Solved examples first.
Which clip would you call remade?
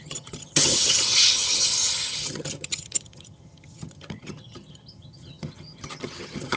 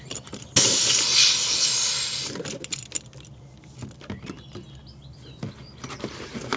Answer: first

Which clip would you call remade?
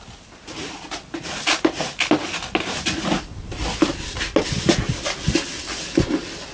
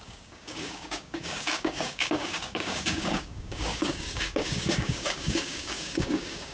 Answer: second